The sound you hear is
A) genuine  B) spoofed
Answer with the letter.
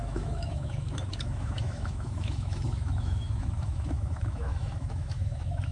B